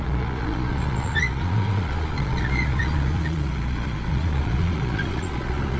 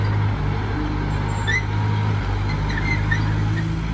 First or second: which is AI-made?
first